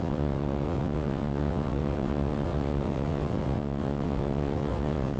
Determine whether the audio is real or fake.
fake